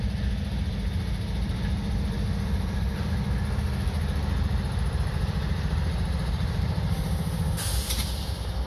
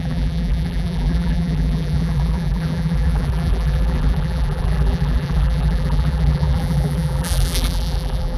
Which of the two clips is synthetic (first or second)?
second